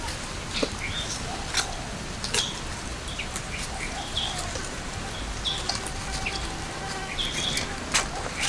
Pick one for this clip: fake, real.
real